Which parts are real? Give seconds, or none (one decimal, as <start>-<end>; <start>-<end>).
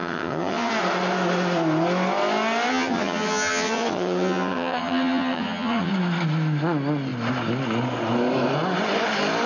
0.7-2.7; 5.9-9.5